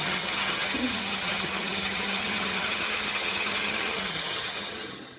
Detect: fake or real fake